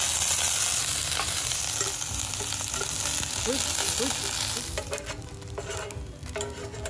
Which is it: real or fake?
real